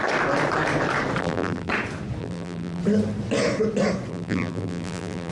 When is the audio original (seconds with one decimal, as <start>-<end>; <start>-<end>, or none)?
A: 0.0-1.2; 1.7-2.2; 2.8-4.1